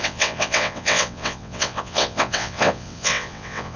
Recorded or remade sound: remade